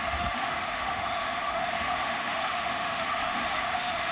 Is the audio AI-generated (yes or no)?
yes